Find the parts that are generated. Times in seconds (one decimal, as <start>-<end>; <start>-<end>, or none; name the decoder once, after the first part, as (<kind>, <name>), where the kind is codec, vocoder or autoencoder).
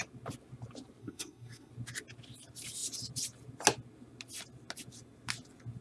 1.0-1.7 (codec, SNAC)